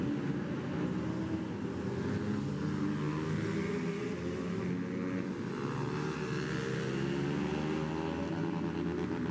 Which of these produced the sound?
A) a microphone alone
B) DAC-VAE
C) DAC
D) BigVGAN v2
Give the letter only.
A